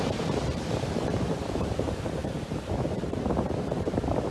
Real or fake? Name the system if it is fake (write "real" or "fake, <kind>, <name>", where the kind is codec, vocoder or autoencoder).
fake, vocoder, BigVGAN v2